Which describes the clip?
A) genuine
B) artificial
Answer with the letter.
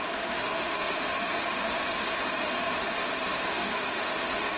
B